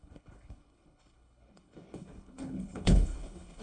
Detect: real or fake fake